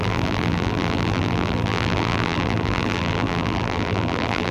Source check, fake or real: fake